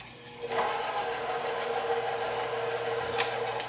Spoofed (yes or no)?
no